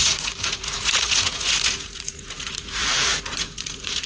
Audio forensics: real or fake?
fake